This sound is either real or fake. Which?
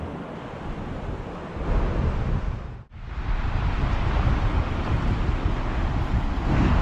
real